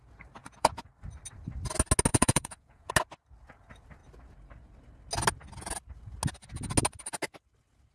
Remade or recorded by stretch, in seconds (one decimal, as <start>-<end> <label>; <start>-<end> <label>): 0.0-0.4 recorded; 0.4-0.9 remade; 0.9-2.1 recorded; 2.1-2.9 remade; 2.9-7.9 recorded